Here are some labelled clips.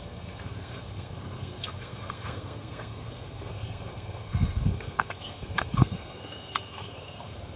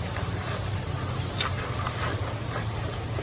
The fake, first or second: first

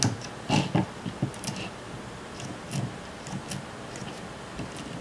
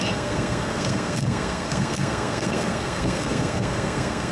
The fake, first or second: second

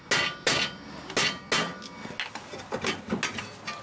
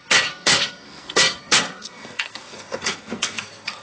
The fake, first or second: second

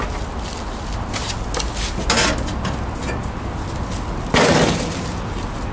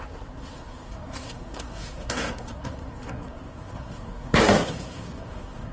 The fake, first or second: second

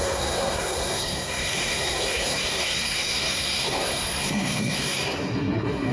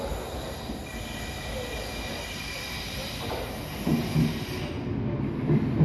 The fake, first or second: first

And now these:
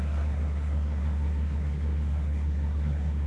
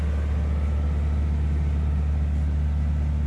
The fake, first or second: first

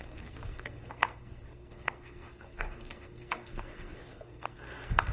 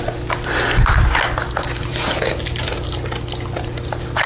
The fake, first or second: first